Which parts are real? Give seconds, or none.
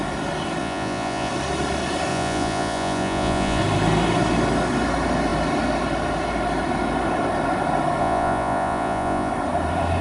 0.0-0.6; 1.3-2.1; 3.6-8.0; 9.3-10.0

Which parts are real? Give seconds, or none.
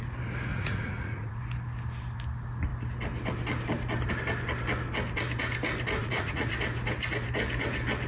0.0-0.5; 1.4-6.0; 6.5-8.1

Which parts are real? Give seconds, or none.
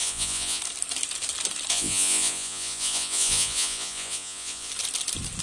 0.6-1.7; 4.7-5.4